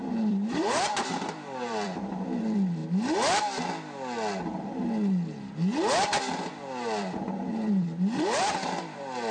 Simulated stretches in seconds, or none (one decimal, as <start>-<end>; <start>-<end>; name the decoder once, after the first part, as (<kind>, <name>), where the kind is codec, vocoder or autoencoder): 0.0-2.8 (vocoder, BigVGAN v2); 6.5-9.3